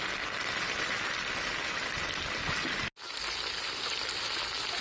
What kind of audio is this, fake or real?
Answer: real